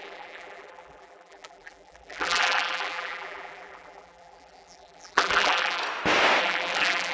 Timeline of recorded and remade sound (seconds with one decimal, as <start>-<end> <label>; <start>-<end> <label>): 0.0-5.8 remade; 5.8-6.4 recorded; 6.4-7.1 remade